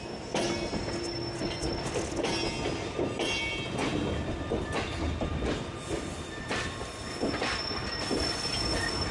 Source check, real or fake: real